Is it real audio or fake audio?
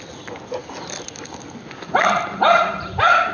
real